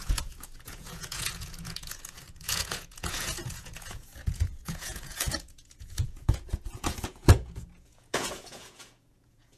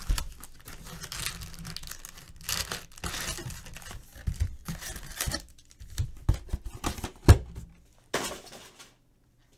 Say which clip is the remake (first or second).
first